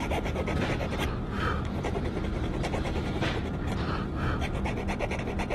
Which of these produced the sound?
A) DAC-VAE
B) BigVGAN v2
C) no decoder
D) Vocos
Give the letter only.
C